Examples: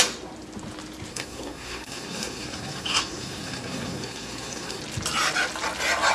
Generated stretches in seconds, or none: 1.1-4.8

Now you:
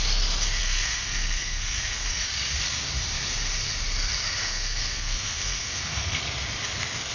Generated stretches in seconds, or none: 0.6-2.1; 4.4-6.2